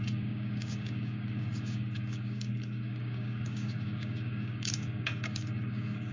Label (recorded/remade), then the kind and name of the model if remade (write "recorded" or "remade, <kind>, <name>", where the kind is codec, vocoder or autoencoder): remade, codec, DAC